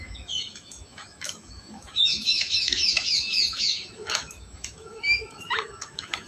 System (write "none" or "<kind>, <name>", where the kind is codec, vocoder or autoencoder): autoencoder, DAC-VAE